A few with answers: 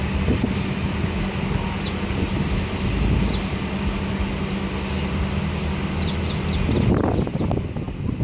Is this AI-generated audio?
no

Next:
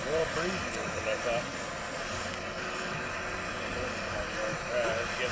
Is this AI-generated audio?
no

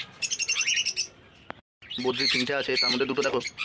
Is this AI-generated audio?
no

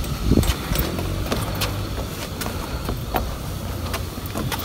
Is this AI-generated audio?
no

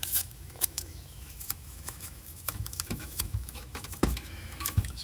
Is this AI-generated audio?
yes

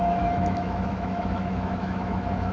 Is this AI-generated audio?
yes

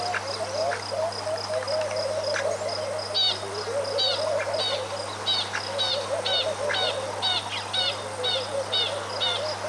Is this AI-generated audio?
no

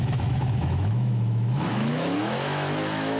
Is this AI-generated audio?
yes